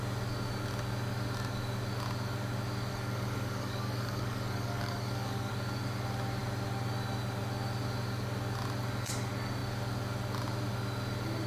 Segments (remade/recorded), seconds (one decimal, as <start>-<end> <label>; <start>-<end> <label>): 0.0-2.9 recorded; 2.9-5.5 remade; 5.5-11.5 recorded